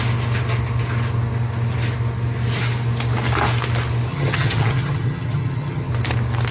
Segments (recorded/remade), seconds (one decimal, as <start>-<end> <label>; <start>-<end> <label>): 0.0-4.1 recorded; 4.1-5.9 remade; 5.9-6.5 recorded